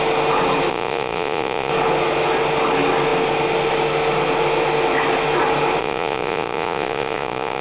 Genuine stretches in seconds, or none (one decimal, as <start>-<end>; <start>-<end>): 0.0-0.7; 1.7-5.8